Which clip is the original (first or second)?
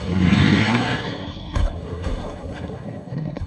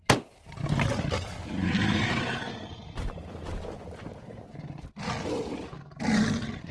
second